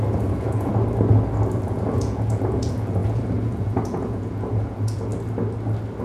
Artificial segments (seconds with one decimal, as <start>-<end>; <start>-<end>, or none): 0.0-0.7; 1.6-5.1